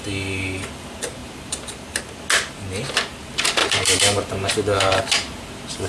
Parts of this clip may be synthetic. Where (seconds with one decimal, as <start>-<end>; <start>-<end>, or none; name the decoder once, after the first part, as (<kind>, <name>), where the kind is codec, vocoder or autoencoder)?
1.2-2.0 (vocoder, BigVGAN v2); 3.6-5.0